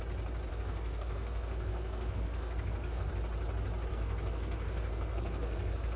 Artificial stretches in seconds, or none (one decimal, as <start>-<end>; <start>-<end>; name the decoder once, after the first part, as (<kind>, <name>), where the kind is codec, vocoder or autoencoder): 0.5-3.1 (codec, SNAC); 3.9-6.0